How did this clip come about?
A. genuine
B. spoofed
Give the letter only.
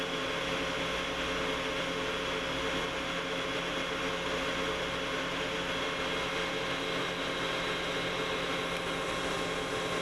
A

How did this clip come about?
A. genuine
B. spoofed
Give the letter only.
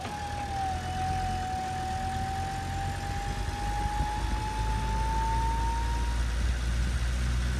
A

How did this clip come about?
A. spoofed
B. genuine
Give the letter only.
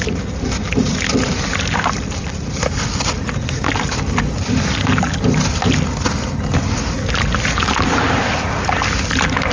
B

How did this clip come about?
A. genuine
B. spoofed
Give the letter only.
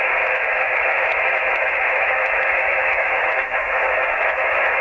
B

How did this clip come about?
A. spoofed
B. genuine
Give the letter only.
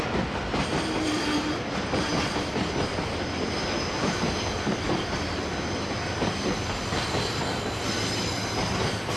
B